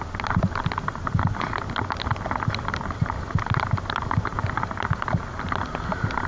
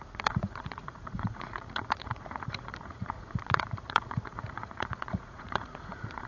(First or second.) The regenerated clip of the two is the second